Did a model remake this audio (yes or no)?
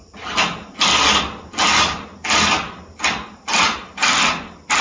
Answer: no